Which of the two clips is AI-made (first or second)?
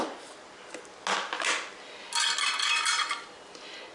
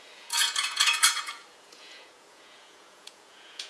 second